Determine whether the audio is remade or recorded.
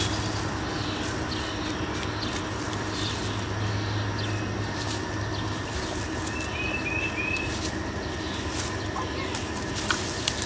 recorded